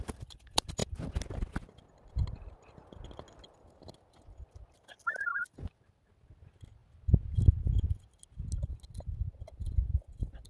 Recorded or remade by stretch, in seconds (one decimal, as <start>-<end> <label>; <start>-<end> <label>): 0.0-10.5 recorded